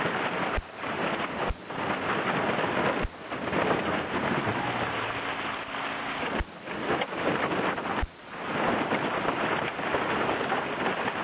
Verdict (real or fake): real